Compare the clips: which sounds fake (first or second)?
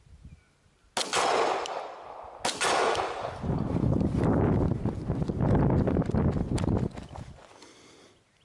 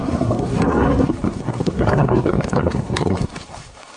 second